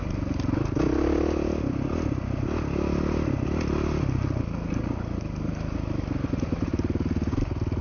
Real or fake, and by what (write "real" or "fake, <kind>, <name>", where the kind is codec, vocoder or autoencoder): real